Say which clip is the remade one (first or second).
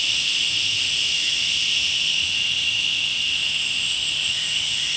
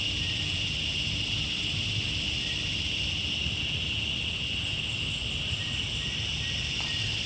first